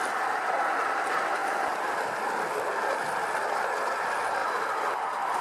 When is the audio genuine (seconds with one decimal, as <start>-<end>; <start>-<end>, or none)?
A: 0.0-1.4; 1.9-4.4; 5.0-5.4